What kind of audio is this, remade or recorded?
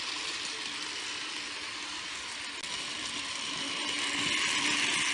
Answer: recorded